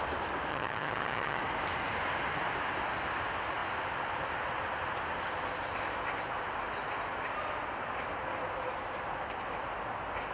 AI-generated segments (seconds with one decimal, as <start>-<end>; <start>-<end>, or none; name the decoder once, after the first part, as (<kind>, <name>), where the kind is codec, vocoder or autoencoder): 0.5-1.4 (vocoder, HiFi-GAN)